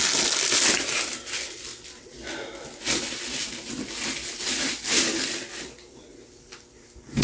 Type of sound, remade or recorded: recorded